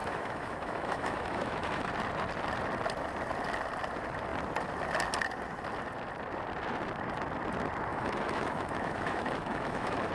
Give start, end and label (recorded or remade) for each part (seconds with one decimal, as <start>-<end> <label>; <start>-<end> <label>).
0.0-1.9 remade; 1.9-7.9 recorded; 7.9-10.1 remade